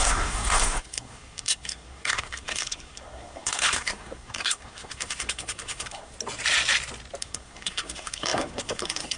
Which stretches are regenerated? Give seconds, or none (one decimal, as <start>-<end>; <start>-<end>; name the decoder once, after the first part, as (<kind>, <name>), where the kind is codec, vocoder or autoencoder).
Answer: 0.0-6.1 (codec, SNAC); 7.2-9.2